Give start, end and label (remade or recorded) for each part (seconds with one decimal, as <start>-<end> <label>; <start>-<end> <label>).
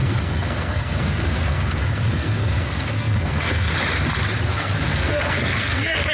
0.0-3.7 remade; 3.7-4.5 recorded; 4.5-6.1 remade